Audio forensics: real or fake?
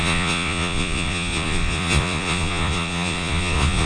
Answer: fake